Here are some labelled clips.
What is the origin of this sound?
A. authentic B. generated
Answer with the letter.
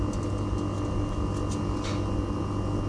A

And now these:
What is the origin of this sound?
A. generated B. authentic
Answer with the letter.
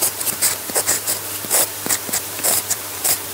A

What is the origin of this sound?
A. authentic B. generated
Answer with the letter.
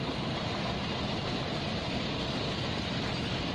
A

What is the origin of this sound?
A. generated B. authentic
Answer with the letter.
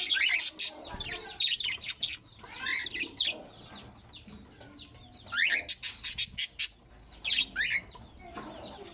B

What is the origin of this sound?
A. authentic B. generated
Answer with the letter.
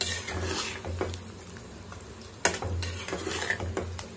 A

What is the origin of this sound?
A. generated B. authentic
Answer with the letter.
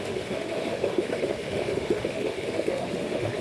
A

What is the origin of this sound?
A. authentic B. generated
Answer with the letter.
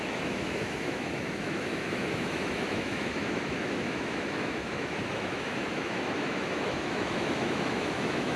B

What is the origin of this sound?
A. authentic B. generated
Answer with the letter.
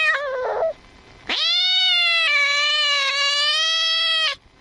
A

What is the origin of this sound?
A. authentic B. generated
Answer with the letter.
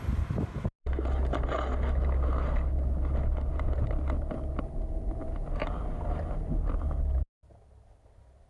A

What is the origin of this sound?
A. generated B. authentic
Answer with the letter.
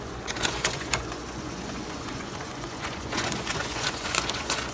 A